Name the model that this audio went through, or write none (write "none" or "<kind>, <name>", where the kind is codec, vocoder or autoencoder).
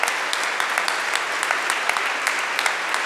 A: none